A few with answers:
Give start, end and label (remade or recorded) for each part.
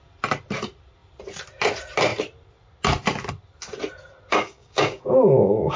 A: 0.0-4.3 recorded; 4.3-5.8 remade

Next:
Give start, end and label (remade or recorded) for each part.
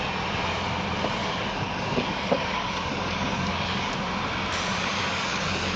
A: 0.0-1.2 recorded; 1.2-3.9 remade; 3.9-5.0 recorded; 5.0-5.8 remade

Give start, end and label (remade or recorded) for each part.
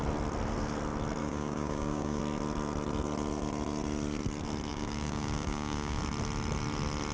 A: 0.0-1.2 recorded; 1.2-2.2 remade; 2.2-4.7 recorded; 4.7-6.0 remade; 6.0-7.1 recorded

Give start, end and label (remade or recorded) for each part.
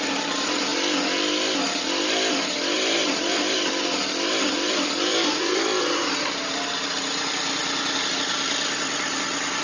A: 0.0-9.6 recorded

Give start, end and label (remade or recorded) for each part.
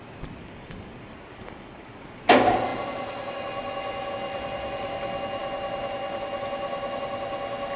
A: 0.0-0.4 recorded; 0.4-2.2 remade; 2.2-7.8 recorded